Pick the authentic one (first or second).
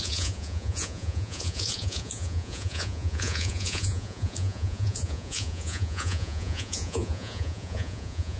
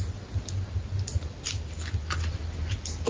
second